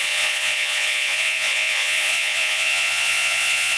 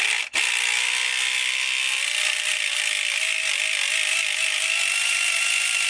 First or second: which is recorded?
second